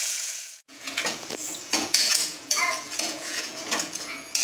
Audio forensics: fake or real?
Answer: fake